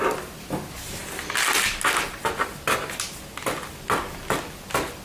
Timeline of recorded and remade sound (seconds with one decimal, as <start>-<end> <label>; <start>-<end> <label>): 0.0-5.0 recorded

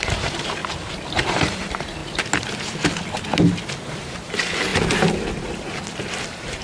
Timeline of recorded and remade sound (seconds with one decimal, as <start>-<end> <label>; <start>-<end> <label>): 0.0-0.6 remade; 0.6-1.1 recorded; 1.1-2.0 remade; 2.0-3.9 recorded; 3.9-4.7 remade; 4.7-6.1 recorded; 6.1-6.6 remade